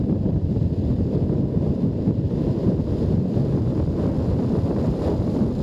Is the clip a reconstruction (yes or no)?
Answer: no